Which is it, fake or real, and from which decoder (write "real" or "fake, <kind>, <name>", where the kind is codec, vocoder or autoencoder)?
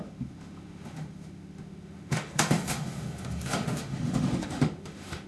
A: fake, autoencoder, DAC-VAE